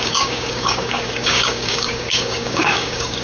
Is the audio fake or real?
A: fake